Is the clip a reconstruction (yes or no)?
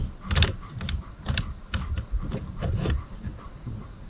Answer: no